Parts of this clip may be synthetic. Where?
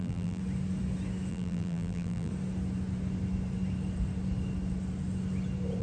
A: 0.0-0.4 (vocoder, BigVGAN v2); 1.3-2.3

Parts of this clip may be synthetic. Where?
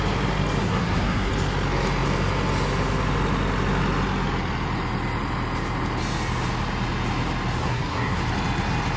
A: 0.6-1.3 (codec, SNAC); 7.6-8.2